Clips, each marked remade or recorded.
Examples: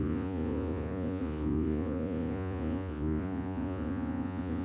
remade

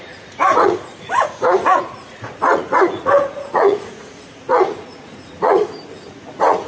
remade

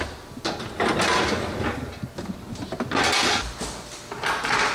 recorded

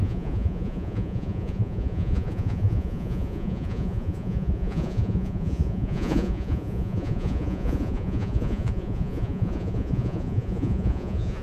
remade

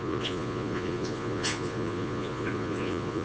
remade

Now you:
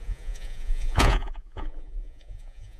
remade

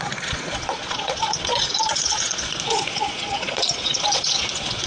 remade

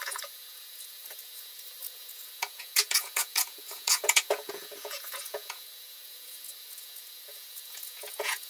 remade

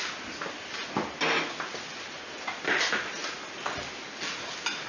recorded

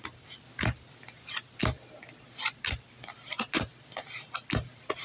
recorded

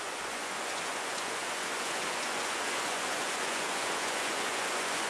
remade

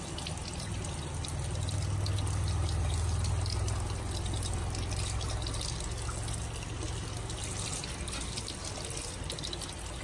recorded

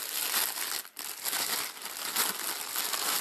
recorded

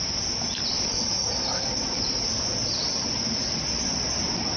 recorded